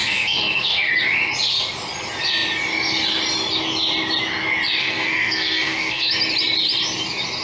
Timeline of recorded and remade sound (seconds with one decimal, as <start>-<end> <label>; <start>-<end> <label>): 0.0-0.9 remade; 0.9-4.8 recorded; 4.8-6.1 remade; 6.1-7.4 recorded